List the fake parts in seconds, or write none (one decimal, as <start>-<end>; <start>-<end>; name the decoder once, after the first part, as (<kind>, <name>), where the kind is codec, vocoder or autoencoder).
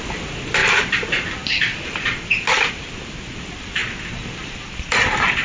0.0-3.8 (vocoder, BigVGAN v2); 4.9-5.4